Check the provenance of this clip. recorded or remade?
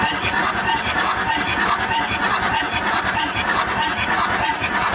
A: recorded